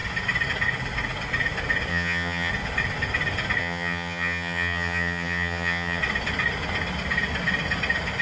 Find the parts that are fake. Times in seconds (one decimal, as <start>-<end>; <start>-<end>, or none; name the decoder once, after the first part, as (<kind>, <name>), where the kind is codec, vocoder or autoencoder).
1.9-2.5 (vocoder, HiFi-GAN); 3.6-6.0